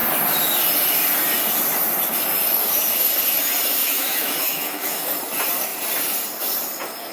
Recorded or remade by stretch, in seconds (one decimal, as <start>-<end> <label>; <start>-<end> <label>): 0.0-3.8 recorded; 3.8-5.2 remade; 5.2-7.1 recorded